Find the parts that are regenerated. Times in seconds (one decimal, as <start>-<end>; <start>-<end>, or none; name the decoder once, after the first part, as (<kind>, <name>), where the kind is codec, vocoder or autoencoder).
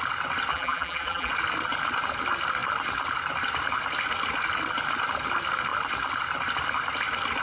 0.5-1.3 (vocoder, BigVGAN v2)